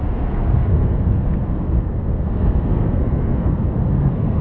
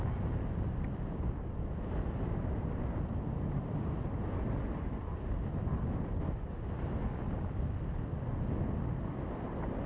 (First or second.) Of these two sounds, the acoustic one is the second